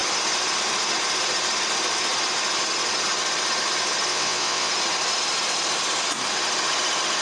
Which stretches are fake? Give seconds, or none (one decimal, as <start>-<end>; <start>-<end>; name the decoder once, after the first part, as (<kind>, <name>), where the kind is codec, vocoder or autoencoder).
4.1-4.7 (vocoder, WaveNeXt)